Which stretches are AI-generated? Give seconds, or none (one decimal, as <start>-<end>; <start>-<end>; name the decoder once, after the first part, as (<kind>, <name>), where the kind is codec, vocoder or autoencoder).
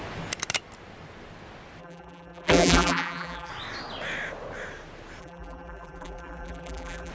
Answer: 1.8-3.5 (vocoder, BigVGAN v2); 5.2-7.1